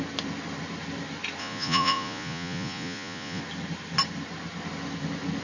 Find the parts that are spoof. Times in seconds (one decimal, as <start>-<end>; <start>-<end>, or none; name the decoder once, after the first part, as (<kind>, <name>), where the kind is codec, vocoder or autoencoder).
1.4-3.4 (vocoder, Vocos)